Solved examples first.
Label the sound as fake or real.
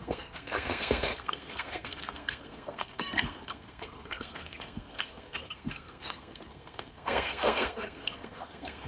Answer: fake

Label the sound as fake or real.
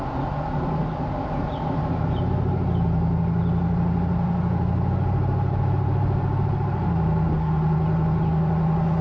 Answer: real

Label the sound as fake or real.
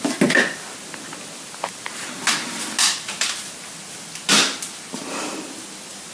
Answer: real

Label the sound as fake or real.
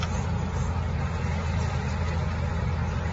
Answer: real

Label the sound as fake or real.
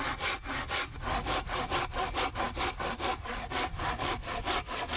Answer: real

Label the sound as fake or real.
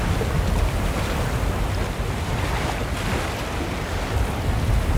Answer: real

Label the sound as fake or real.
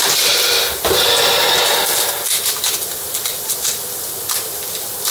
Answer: real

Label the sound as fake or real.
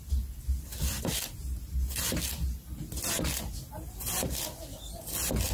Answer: real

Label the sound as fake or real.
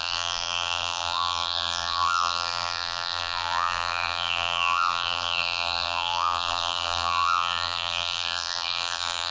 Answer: fake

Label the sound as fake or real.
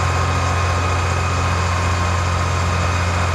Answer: real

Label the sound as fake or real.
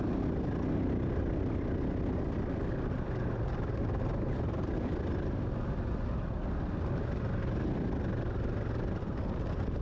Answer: real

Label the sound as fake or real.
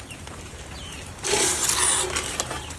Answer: real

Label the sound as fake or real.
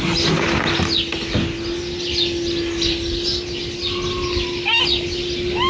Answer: real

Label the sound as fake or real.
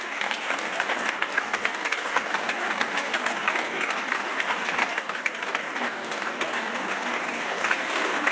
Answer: fake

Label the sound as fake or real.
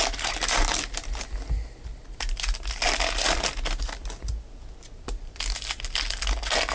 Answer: real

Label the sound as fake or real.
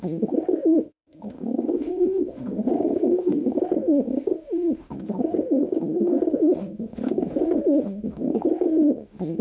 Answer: fake